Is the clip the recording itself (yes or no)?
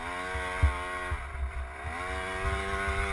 yes